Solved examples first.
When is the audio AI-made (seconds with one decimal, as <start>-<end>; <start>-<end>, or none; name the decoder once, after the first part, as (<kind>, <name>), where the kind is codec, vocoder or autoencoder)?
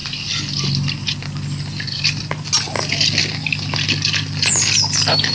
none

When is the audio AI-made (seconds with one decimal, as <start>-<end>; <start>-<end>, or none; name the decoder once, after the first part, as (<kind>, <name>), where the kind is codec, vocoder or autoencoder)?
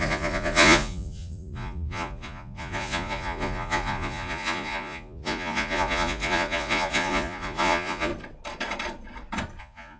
0.0-8.1 (vocoder, Vocos); 9.6-10.0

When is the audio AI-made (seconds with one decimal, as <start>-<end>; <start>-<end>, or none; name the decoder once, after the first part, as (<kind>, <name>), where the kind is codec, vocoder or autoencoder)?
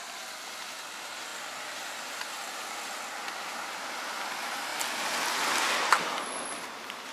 none